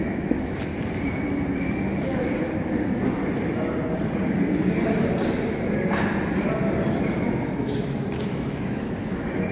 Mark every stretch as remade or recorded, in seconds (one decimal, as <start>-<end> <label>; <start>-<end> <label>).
0.0-0.7 remade; 0.7-1.6 recorded; 1.6-3.2 remade; 3.2-7.6 recorded; 7.6-9.5 remade